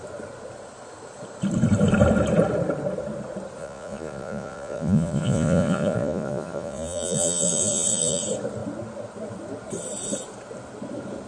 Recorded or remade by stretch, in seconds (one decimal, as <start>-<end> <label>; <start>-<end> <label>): 0.0-3.6 recorded; 3.6-8.2 remade; 8.2-11.3 recorded